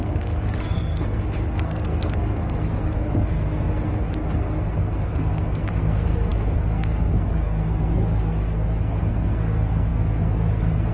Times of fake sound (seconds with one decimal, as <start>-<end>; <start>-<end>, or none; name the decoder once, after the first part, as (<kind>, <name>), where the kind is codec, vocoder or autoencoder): 0.0-10.9 (codec, SNAC)